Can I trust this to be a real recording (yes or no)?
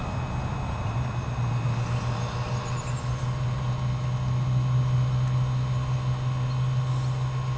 yes